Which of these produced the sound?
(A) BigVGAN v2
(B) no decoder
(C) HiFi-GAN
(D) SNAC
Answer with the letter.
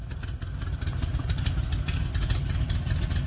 B